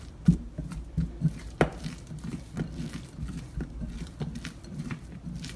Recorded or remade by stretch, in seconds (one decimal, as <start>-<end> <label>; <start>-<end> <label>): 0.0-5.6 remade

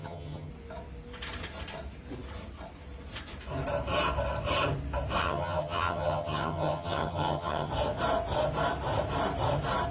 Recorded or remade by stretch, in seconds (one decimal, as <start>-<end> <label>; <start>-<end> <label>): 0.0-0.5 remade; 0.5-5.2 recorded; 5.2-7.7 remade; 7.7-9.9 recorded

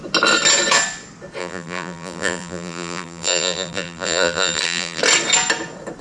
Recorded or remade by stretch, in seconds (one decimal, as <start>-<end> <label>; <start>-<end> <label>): 0.0-1.4 recorded; 1.4-5.0 remade; 5.0-6.0 recorded

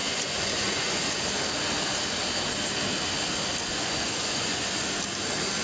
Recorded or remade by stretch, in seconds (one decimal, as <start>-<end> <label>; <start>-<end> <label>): 0.0-1.3 remade; 1.3-3.7 recorded; 3.7-4.6 remade; 4.6-5.6 recorded